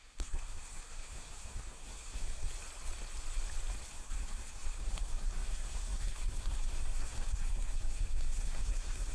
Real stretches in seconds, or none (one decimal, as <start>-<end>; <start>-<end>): 2.5-3.9